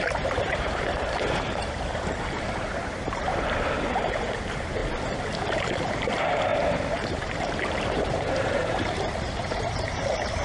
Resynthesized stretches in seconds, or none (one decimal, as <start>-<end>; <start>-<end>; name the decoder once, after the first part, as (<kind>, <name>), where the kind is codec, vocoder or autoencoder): 0.0-4.8 (vocoder, BigVGAN v2); 5.9-10.4